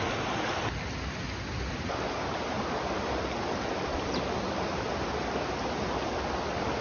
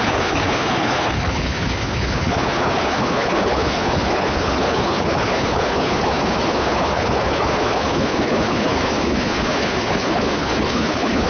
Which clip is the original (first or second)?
first